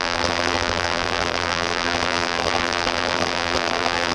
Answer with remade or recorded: remade